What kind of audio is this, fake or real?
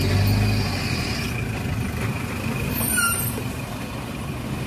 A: real